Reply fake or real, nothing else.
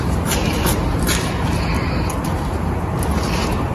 real